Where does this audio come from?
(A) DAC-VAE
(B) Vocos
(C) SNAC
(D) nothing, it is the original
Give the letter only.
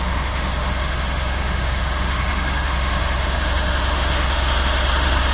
A